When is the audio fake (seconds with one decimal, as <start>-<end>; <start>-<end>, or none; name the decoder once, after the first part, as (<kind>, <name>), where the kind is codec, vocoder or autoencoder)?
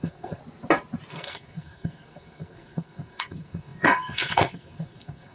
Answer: 0.0-0.4 (codec, SNAC); 1.1-5.3